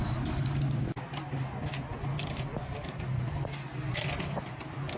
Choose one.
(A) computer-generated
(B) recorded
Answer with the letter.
B